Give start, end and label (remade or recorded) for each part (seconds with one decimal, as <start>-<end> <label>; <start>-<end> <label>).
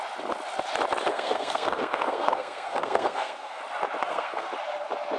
0.0-1.1 recorded; 1.1-3.6 remade; 3.6-4.0 recorded; 4.0-4.5 remade; 4.5-5.2 recorded